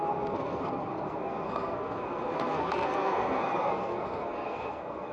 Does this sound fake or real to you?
fake